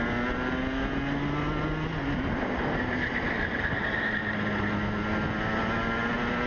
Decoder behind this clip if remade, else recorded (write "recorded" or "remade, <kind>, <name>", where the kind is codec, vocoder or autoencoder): recorded